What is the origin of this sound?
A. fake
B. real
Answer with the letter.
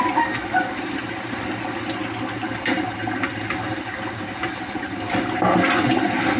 B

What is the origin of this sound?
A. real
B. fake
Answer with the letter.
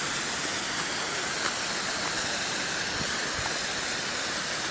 A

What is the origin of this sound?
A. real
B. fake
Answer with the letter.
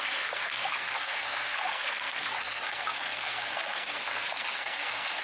B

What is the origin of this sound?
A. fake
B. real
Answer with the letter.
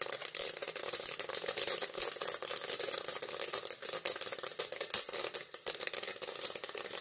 B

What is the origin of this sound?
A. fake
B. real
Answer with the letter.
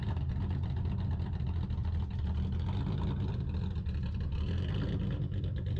B